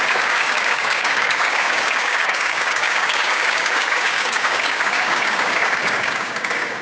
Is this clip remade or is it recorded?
remade